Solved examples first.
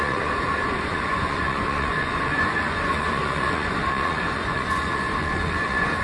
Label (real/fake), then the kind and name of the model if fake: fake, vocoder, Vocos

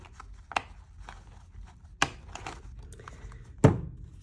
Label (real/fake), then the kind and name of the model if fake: real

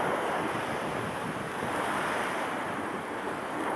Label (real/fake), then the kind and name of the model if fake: real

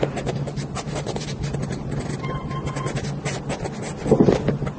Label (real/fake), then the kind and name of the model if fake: real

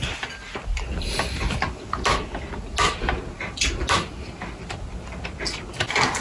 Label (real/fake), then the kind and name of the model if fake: real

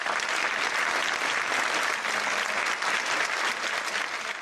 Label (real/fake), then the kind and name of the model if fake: real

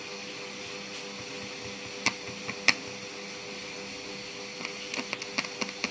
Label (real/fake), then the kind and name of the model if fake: real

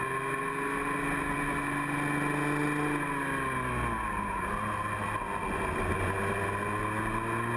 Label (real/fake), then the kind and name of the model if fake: real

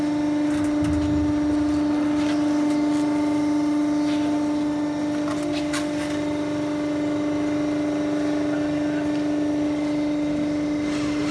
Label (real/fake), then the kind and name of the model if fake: real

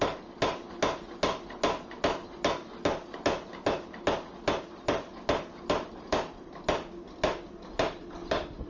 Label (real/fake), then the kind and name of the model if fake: real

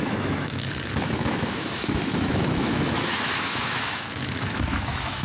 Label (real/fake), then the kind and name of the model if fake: fake, autoencoder, DAC-VAE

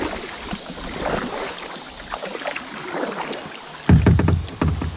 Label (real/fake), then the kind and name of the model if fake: real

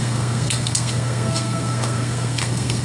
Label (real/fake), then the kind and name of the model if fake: fake, codec, SNAC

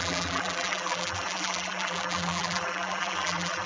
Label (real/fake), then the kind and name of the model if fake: fake, vocoder, BigVGAN v2